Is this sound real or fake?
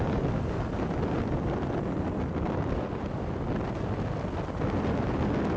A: real